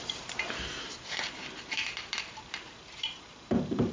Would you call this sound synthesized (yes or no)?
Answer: yes